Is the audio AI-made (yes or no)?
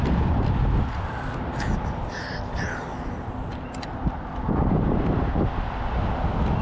no